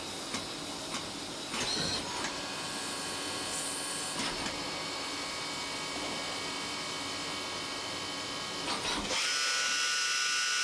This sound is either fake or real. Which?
real